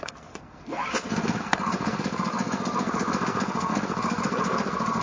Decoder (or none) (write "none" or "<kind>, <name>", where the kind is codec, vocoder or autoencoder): codec, SNAC